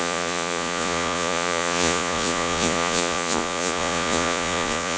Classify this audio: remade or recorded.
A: remade